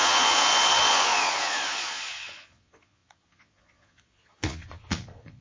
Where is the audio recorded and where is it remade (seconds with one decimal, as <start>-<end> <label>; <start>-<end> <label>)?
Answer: 0.0-5.4 remade